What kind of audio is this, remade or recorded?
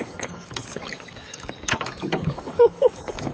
remade